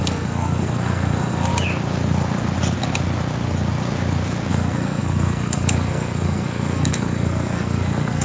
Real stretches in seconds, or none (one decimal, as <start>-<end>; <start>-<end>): 1.5-4.5